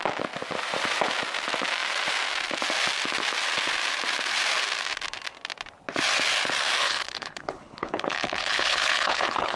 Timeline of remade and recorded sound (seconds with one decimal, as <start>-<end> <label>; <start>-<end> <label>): 0.0-6.8 recorded; 6.8-9.6 remade